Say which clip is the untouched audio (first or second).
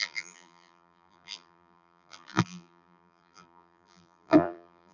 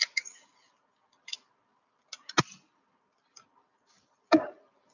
second